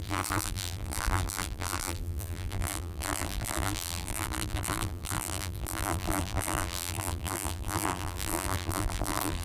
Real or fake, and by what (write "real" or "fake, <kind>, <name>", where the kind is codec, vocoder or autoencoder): fake, vocoder, BigVGAN v2